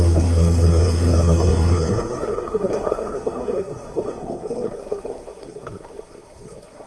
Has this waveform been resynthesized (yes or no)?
yes